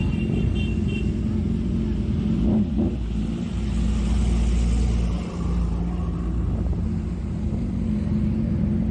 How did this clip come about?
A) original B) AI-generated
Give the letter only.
A